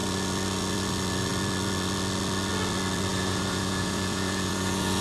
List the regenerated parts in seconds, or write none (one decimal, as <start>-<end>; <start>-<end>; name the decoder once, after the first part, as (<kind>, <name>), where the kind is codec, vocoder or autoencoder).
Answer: 3.1-5.0 (vocoder, Vocos)